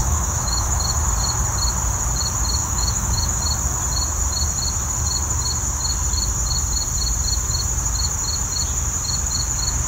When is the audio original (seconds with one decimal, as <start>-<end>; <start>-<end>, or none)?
0.8-2.6; 3.4-9.9